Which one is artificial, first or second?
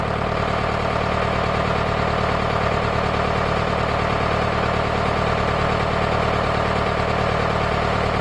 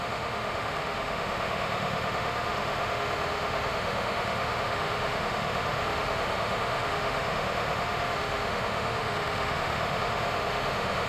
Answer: second